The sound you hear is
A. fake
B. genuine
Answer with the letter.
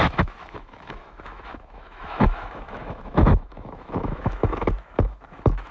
A